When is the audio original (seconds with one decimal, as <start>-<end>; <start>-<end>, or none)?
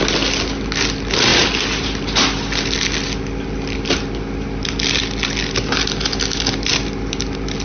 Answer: 0.0-7.6